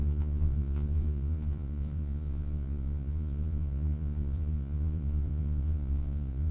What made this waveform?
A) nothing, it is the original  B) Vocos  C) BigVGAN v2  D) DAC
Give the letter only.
B